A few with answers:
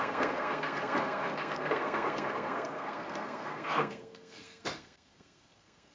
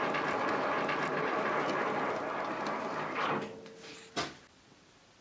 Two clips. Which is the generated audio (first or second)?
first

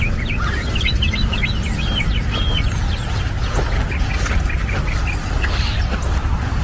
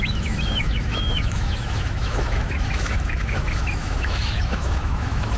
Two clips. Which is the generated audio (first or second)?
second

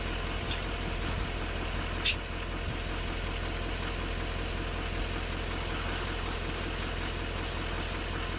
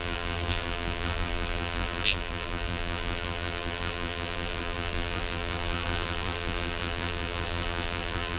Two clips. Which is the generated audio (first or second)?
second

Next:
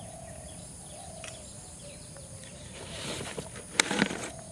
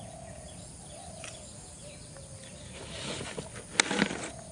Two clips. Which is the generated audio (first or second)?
first